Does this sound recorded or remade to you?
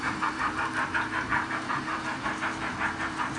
remade